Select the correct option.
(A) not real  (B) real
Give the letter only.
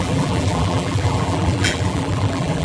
A